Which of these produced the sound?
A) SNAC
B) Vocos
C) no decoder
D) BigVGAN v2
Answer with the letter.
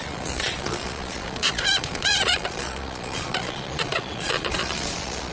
B